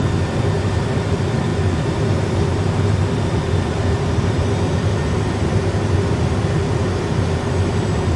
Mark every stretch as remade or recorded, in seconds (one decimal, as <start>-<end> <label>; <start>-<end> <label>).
0.0-8.2 recorded